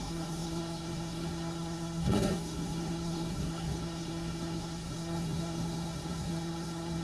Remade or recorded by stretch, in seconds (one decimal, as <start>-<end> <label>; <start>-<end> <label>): 0.0-7.0 remade